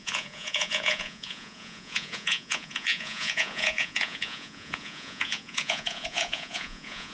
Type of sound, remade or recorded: remade